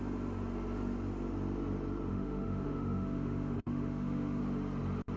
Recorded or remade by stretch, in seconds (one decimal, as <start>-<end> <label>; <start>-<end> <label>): 0.0-2.1 recorded; 2.1-4.4 remade; 4.4-5.2 recorded